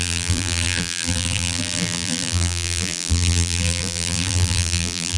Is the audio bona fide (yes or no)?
no